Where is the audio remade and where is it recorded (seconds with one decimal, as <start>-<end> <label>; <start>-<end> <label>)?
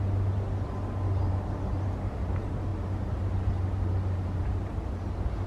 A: 0.0-5.5 recorded